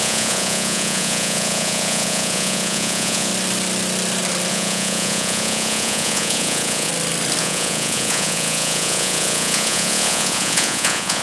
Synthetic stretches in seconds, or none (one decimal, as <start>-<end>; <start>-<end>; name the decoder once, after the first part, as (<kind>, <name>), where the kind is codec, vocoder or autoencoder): 0.0-3.3 (vocoder, Vocos); 4.5-6.9; 7.4-11.2